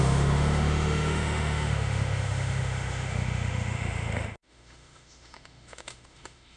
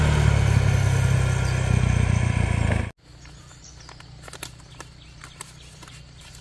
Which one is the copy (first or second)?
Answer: first